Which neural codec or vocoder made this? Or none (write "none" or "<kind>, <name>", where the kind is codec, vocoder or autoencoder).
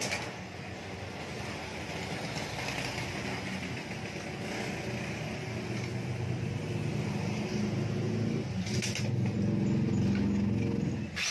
none